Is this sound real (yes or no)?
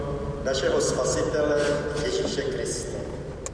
yes